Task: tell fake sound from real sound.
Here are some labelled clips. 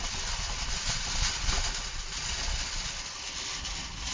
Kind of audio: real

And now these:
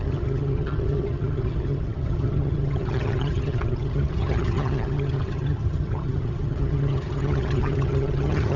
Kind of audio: fake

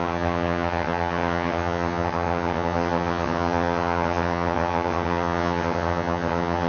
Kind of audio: fake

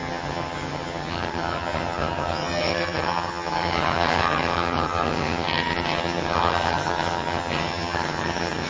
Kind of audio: fake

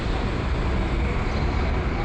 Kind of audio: real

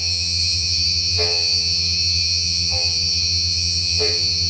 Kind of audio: fake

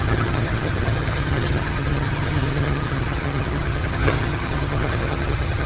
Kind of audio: fake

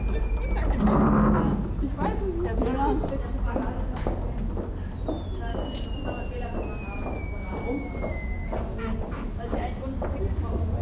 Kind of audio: real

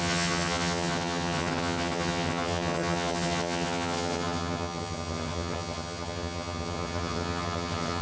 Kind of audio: fake